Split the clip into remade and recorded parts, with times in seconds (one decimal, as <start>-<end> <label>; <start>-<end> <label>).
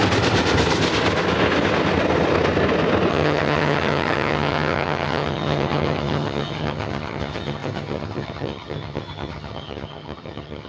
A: 0.0-3.1 recorded; 3.1-10.7 remade